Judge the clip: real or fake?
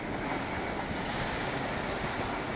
real